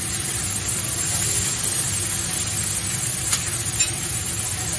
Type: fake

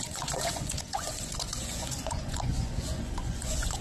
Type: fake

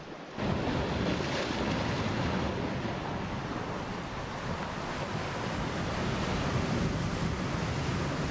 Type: real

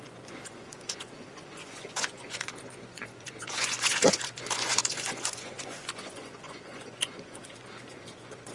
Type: fake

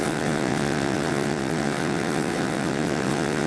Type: fake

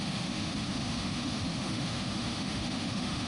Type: fake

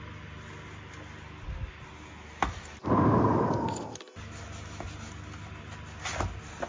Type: real